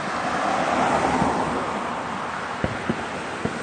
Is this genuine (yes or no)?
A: yes